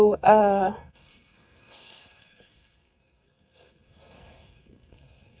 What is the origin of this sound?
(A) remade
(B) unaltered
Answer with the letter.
A